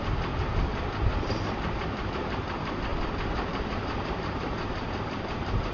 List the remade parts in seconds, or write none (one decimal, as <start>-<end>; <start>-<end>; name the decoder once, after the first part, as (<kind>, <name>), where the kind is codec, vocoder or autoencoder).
0.0-0.7 (vocoder, BigVGAN v2); 2.1-5.7